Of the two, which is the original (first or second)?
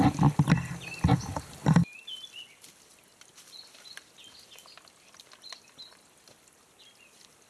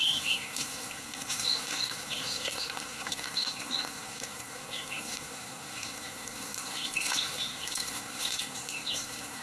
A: first